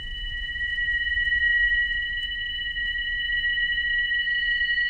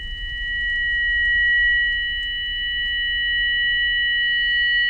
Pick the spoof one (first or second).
first